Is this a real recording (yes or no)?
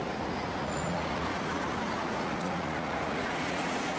no